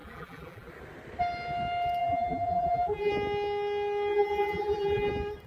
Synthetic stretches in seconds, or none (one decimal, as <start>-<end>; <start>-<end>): 0.0-0.7; 2.0-3.1; 4.1-5.1